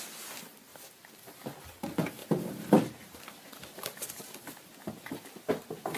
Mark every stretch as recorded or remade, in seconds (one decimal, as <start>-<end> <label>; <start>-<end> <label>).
0.0-2.2 recorded; 2.2-5.5 remade; 5.5-6.0 recorded